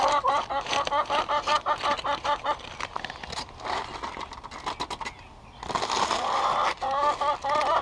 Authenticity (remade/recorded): recorded